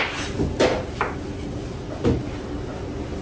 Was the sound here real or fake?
real